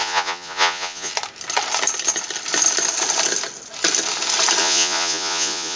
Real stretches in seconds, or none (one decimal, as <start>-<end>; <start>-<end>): 1.1-4.6